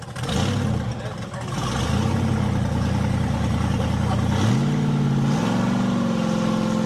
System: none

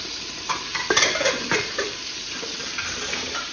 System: vocoder, BigVGAN v2